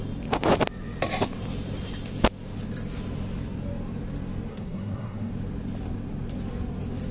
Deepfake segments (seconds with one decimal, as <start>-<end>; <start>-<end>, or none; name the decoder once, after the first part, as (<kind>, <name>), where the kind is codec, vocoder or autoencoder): 4.5-5.3 (codec, SNAC)